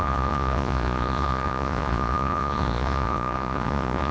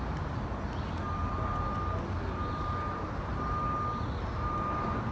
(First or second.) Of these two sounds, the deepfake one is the first